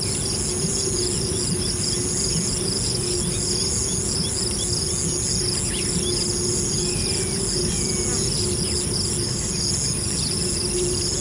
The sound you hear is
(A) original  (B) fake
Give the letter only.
A